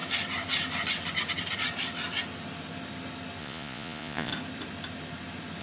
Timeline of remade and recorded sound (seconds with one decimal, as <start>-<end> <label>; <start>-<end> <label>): 0.0-3.4 recorded; 3.4-4.3 remade; 4.3-5.6 recorded